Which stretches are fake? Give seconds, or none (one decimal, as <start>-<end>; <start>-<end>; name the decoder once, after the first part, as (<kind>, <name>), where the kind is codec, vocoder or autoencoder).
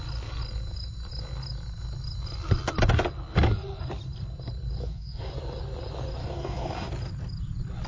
4.8-5.3 (codec, DAC); 6.2-6.9